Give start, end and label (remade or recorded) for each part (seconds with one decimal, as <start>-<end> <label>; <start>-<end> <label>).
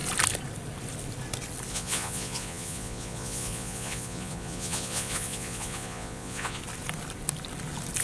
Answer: 0.0-1.7 recorded; 1.7-6.6 remade; 6.6-8.0 recorded